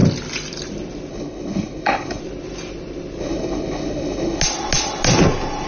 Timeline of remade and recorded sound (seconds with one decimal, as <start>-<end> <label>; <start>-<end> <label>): 0.0-1.1 recorded; 1.1-2.2 remade; 2.2-3.2 recorded; 3.2-4.4 remade; 4.4-5.7 recorded